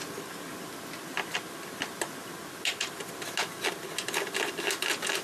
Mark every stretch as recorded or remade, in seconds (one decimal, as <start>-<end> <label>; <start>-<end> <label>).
0.0-5.2 recorded